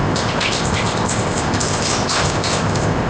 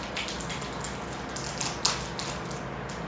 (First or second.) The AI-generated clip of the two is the first